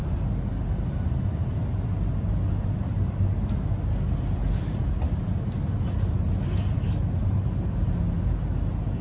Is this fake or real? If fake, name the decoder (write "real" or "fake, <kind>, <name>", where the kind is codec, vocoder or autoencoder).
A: real